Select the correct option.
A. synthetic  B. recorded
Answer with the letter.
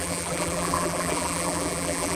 A